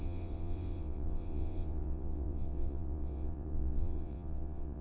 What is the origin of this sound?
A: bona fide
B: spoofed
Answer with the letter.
B